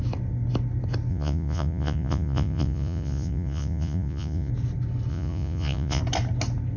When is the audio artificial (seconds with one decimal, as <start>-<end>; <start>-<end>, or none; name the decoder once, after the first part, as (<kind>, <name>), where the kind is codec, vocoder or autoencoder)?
1.1-4.5 (vocoder, Vocos); 5.1-6.0

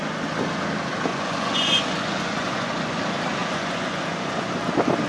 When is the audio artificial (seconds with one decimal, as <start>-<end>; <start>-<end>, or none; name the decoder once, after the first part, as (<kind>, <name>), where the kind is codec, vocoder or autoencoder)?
1.1-3.0 (vocoder, Vocos); 3.4-4.5